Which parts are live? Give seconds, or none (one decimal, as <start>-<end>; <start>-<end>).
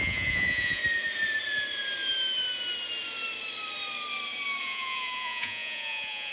0.8-4.6